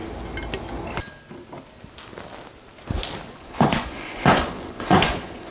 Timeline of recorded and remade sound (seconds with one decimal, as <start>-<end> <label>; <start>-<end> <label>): 0.0-3.3 recorded; 3.3-5.5 remade